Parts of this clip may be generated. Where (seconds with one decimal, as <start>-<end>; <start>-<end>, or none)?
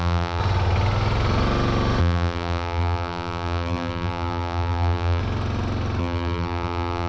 0.0-0.4; 2.0-5.2; 6.0-7.1